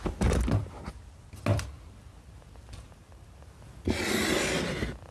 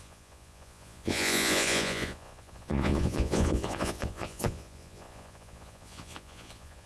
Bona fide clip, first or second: first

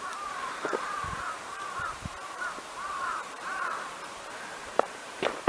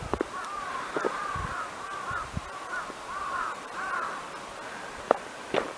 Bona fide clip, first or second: second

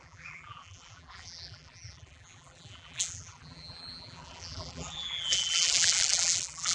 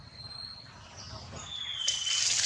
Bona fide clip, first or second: second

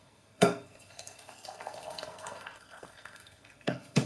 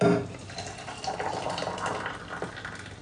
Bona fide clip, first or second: second